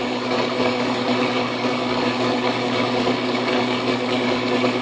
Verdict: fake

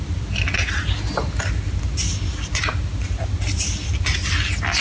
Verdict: real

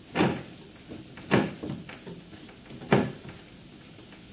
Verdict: real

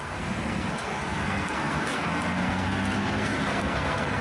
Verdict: fake